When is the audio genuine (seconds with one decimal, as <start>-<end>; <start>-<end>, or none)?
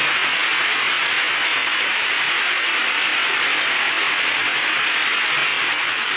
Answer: 0.0-1.6; 2.3-5.5